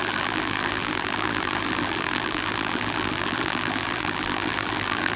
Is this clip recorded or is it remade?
remade